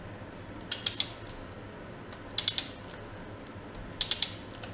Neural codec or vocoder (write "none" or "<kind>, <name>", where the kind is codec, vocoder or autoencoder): none